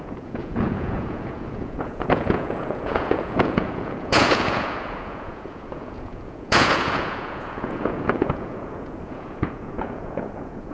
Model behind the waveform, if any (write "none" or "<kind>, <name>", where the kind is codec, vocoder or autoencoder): vocoder, Vocos